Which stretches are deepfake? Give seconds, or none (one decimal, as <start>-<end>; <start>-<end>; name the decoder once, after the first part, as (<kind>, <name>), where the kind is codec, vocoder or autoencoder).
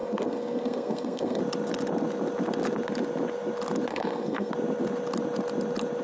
0.0-1.4 (codec, SNAC); 3.9-4.5